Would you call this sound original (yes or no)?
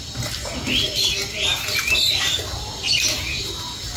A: yes